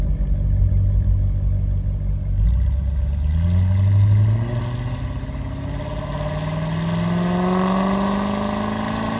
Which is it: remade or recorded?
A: recorded